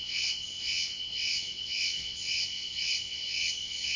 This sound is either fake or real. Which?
fake